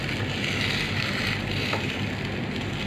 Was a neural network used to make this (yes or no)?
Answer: no